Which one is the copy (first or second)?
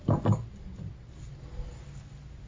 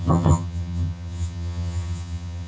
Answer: second